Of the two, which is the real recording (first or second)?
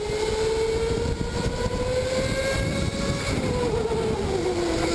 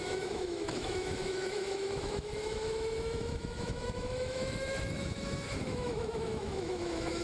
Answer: first